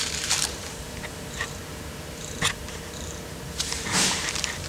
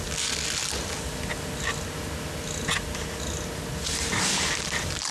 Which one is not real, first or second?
first